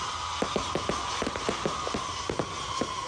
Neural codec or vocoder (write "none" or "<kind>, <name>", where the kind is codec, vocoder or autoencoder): none